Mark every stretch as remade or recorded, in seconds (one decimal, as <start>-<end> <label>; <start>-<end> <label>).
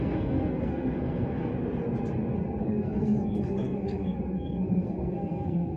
0.0-1.5 remade; 1.5-2.6 recorded; 2.6-5.8 remade